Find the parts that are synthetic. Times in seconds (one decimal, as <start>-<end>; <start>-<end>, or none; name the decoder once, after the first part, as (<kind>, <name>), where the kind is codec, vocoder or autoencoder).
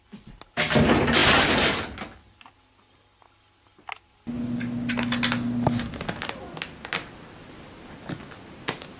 none